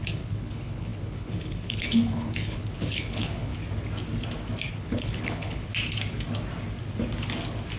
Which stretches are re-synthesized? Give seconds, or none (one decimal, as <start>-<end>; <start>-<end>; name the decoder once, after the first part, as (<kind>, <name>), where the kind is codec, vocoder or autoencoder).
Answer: 0.0-3.5 (codec, HILCodec); 4.7-5.7